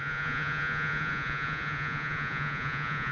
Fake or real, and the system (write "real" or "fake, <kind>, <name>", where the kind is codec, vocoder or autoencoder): fake, vocoder, Vocos